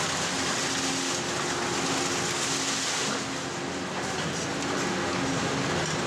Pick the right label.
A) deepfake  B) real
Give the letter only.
B